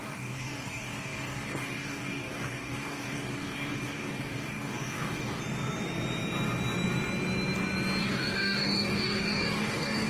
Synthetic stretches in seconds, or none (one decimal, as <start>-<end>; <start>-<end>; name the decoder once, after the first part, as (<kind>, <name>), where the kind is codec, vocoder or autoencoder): 0.0-5.4 (codec, DAC); 8.0-10.1